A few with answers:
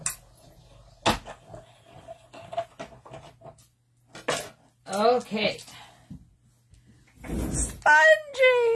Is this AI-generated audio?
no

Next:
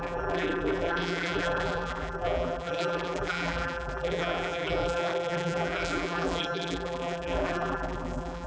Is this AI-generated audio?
yes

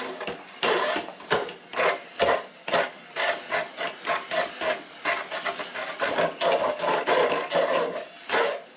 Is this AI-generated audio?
no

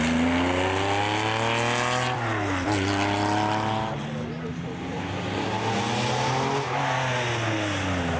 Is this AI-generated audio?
no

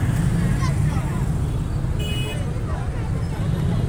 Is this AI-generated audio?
no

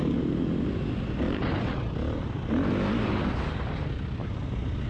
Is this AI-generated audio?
no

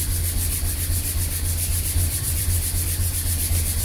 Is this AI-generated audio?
yes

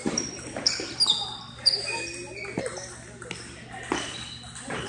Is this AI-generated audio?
no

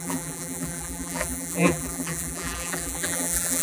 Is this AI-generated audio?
yes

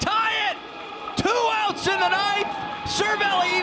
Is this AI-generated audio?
no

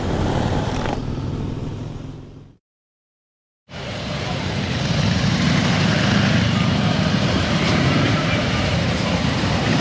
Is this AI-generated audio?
yes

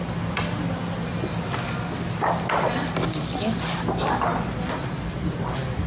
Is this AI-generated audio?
no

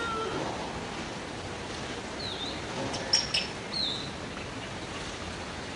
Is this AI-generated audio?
no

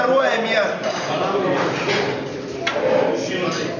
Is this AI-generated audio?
no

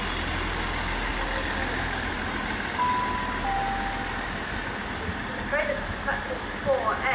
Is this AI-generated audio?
no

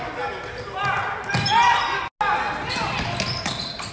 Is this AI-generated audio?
no